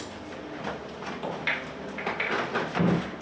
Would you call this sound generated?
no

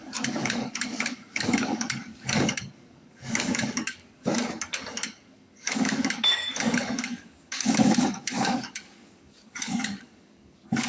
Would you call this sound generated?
yes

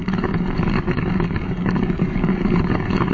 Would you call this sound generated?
yes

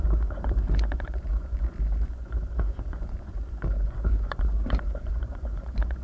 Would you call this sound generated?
yes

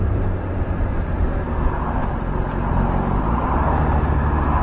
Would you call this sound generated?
no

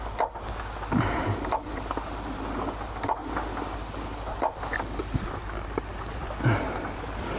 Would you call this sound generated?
no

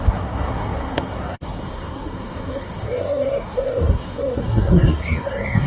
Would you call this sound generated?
yes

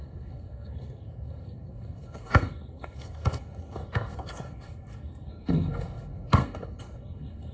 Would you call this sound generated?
yes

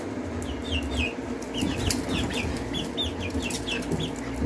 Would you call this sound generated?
no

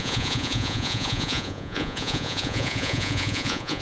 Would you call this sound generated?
yes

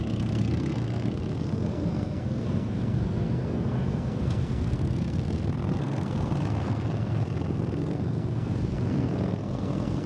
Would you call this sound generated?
yes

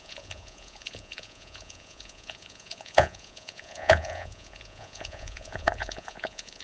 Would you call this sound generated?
yes